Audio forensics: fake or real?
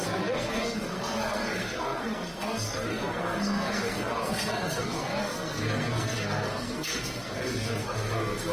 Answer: fake